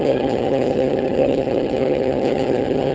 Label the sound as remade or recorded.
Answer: remade